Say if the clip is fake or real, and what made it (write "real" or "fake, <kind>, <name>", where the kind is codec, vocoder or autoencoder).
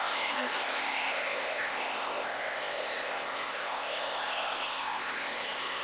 fake, codec, ZipCodec